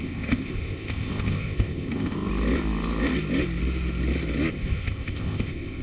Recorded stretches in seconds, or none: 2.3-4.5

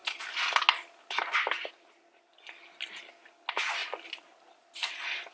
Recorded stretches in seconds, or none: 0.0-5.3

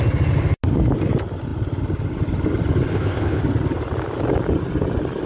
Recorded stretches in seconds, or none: 0.0-2.9; 3.4-5.3

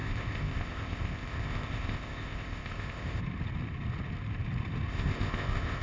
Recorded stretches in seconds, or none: 3.2-4.9